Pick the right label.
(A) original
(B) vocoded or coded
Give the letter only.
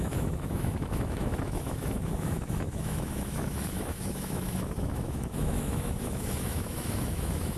B